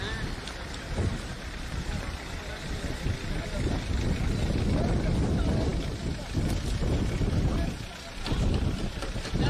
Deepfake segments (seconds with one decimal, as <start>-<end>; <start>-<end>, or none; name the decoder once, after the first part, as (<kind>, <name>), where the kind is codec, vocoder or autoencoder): none